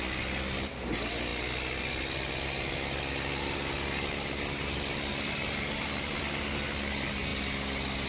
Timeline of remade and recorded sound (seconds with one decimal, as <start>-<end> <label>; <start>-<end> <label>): 0.0-8.1 recorded